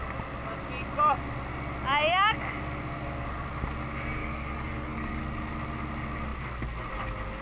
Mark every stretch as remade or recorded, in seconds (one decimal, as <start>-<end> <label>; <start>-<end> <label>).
0.0-4.2 recorded; 4.2-5.2 remade; 5.2-7.4 recorded